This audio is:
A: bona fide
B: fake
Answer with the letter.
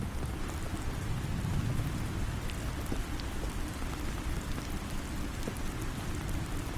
A